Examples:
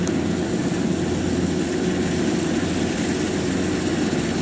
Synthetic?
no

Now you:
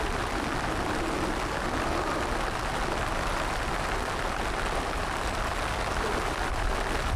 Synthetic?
no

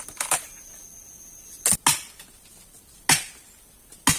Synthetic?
no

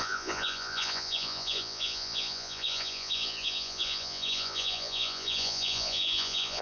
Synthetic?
yes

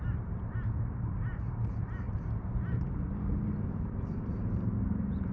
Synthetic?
yes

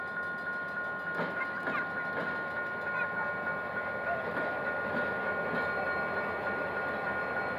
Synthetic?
no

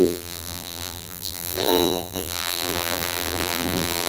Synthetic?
yes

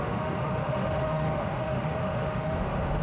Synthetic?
yes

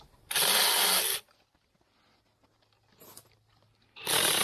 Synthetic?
no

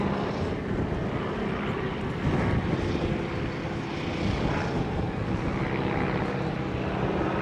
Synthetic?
no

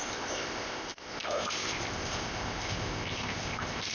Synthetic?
yes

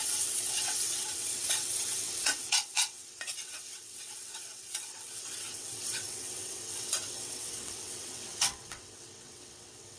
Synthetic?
yes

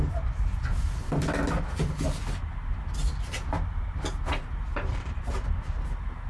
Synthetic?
no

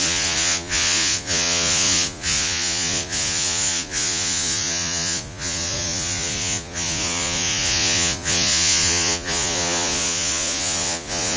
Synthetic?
yes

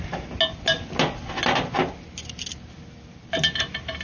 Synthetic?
no